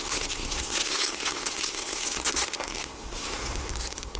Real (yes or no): no